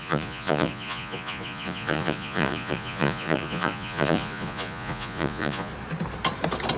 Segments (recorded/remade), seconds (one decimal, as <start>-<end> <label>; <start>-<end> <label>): 0.0-5.7 remade; 5.7-6.8 recorded